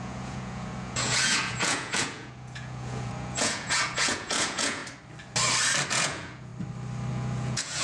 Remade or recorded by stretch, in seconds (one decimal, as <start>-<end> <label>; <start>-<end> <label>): 0.0-4.8 remade; 4.8-5.9 recorded; 5.9-6.5 remade; 6.5-7.1 recorded; 7.1-7.8 remade